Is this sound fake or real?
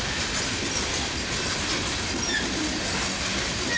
real